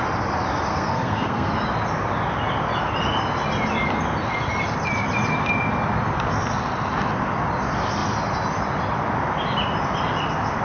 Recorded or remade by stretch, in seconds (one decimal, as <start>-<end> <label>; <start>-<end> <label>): 0.0-0.7 recorded; 0.7-1.5 remade; 1.5-10.6 recorded